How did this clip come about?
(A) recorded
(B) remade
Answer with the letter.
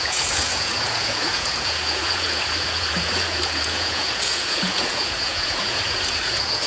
B